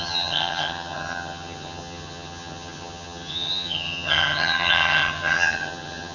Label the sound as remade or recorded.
remade